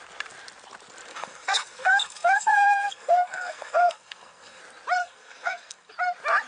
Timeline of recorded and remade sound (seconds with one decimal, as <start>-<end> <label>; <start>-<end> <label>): 0.0-1.1 recorded; 1.1-4.6 remade; 4.6-5.0 recorded; 5.0-5.9 remade; 5.9-6.5 recorded